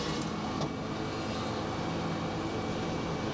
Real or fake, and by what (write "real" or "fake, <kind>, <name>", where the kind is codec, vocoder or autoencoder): real